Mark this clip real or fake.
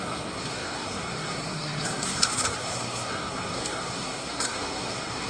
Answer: fake